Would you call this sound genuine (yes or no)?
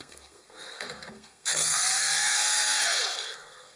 no